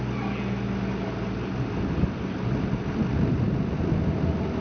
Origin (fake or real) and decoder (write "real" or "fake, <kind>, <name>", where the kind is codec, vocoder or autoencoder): real